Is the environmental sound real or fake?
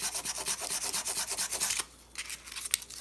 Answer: real